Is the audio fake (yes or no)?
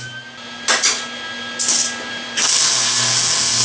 no